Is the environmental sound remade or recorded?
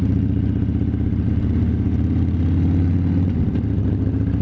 recorded